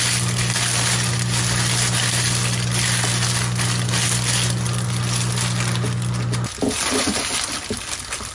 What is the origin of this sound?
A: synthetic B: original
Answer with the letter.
B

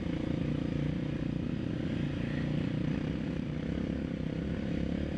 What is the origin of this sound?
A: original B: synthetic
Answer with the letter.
A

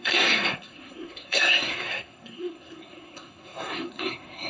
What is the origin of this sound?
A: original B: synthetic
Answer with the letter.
B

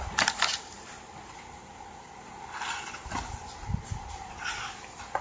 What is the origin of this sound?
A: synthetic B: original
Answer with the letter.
B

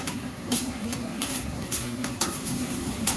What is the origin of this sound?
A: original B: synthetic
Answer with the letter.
B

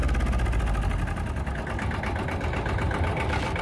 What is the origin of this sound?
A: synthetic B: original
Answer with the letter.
B